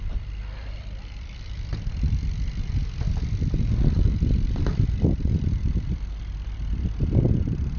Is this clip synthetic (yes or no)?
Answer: yes